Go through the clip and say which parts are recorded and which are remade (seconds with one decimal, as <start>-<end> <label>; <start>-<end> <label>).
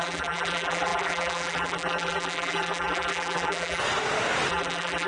0.0-3.8 remade; 3.8-4.5 recorded; 4.5-5.1 remade